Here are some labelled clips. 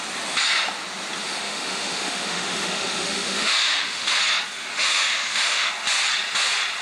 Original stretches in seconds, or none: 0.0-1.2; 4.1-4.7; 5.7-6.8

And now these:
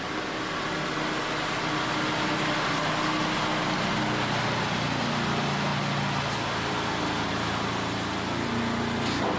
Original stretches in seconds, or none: 0.0-9.4

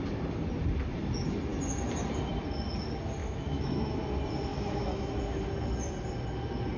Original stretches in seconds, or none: 0.0-3.2; 4.0-4.5; 5.1-6.8

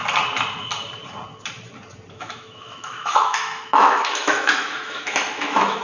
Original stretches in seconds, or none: 0.0-2.1

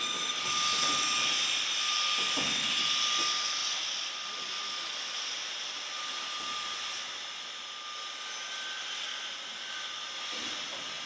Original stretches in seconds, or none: 0.0-11.1